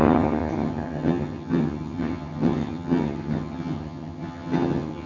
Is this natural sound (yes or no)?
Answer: no